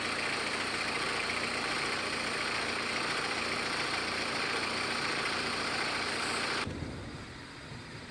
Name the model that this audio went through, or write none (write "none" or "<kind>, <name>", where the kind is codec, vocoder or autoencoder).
none